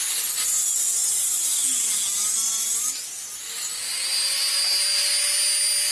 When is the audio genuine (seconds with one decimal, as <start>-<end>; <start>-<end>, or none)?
0.0-5.9